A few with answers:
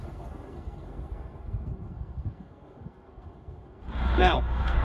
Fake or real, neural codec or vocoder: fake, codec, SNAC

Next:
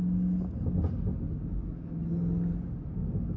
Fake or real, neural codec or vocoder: real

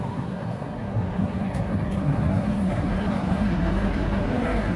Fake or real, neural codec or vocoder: fake, codec, SNAC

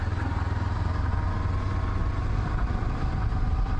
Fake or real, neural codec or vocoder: real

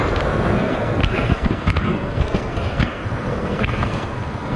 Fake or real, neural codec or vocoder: fake, codec, SNAC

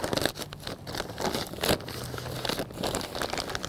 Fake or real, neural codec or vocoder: real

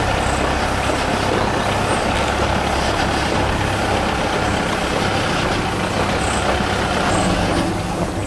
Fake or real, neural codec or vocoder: real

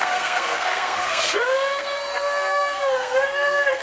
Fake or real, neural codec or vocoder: fake, codec, SNAC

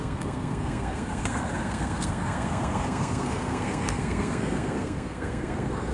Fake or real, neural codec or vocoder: fake, codec, SNAC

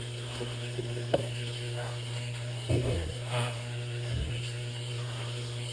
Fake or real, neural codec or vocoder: fake, codec, SNAC